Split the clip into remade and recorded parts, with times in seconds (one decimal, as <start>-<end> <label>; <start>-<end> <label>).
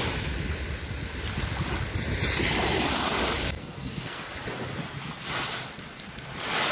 0.0-3.6 recorded; 3.6-4.3 remade; 4.3-6.7 recorded